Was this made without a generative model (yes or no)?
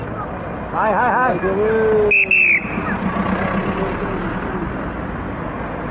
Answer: yes